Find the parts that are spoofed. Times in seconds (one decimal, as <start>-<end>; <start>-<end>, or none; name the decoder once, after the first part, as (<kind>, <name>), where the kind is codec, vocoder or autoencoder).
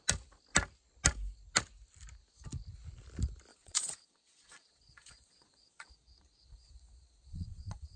3.5-8.0 (vocoder, Vocos)